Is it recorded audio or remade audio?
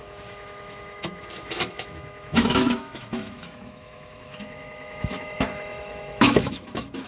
remade